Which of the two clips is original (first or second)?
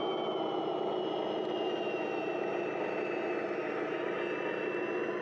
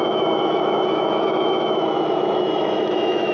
first